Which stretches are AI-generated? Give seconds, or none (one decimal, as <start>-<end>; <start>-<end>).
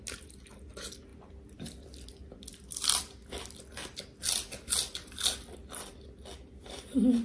none